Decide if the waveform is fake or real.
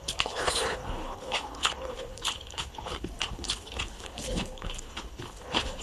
fake